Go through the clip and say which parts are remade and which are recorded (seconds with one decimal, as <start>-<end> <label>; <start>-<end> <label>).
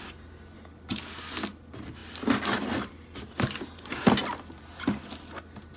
0.0-5.8 recorded